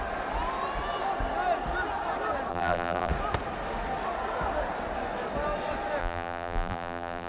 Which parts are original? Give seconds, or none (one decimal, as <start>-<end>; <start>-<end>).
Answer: 0.0-2.5; 3.1-6.0